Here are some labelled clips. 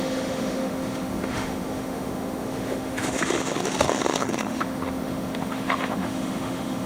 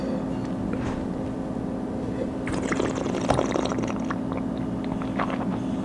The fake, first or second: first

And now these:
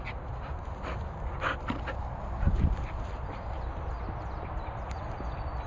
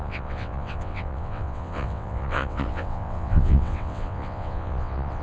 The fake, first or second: second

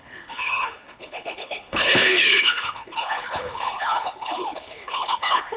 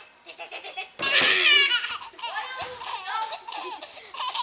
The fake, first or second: first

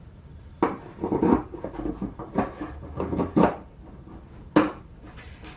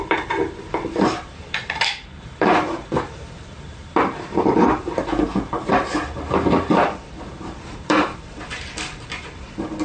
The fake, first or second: second